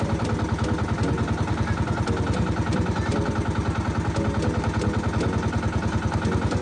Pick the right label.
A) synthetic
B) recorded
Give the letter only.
A